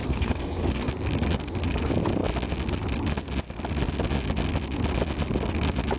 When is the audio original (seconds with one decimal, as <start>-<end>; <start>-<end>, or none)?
0.9-6.0